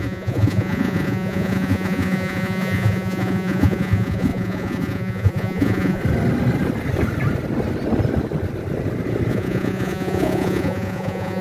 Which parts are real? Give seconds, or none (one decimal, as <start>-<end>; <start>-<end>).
6.0-9.3